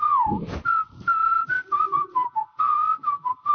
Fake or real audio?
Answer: real